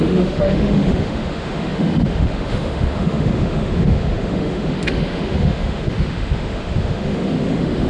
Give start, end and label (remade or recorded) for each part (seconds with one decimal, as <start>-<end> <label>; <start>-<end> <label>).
0.0-7.9 remade